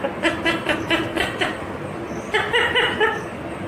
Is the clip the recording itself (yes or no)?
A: yes